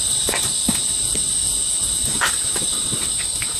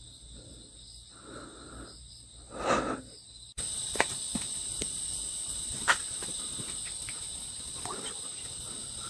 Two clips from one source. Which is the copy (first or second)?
second